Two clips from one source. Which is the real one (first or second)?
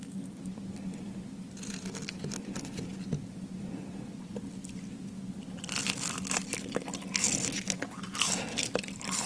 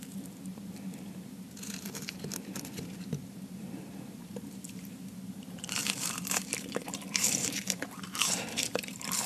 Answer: first